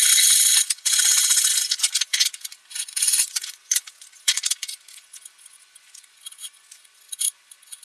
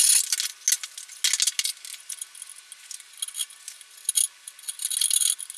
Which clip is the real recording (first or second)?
second